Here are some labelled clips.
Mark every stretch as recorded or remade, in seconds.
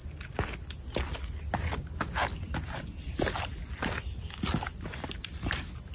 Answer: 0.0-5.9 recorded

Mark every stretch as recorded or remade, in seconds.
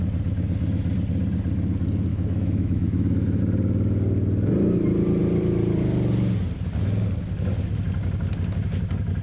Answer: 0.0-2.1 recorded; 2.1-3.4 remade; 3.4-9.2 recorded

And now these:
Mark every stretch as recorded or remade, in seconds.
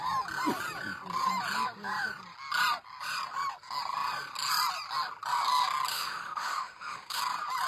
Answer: 0.0-5.9 recorded; 5.9-7.2 remade; 7.2-7.7 recorded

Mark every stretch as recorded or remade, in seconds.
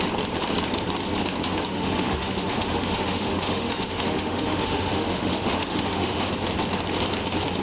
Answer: 0.0-1.7 recorded; 1.7-6.3 remade; 6.3-7.6 recorded